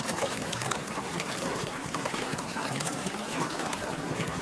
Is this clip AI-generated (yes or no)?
yes